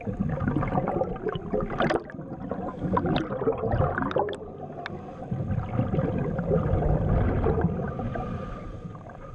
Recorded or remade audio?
recorded